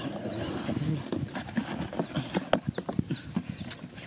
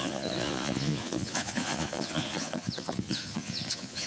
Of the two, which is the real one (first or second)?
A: first